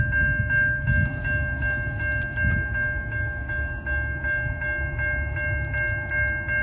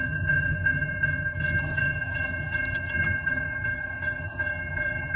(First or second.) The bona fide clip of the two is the first